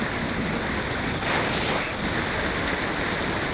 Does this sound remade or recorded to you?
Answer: recorded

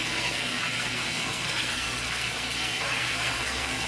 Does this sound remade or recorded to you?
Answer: remade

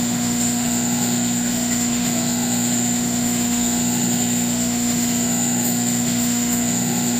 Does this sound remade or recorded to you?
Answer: remade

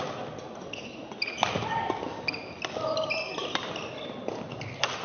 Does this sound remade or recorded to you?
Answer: recorded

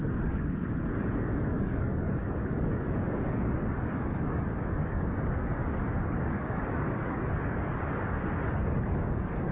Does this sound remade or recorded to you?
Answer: remade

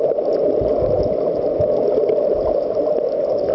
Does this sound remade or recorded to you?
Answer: recorded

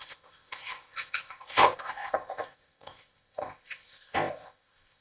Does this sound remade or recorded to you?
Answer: remade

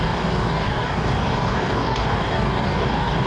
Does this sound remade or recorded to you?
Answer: remade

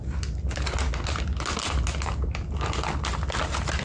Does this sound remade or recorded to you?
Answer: recorded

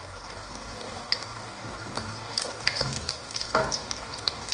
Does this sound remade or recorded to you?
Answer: remade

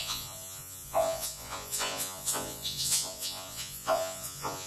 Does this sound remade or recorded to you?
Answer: remade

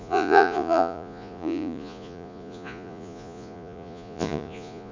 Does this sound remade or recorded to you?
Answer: remade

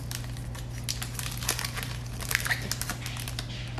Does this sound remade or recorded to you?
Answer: recorded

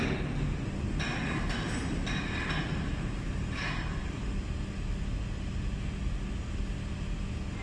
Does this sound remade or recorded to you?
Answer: recorded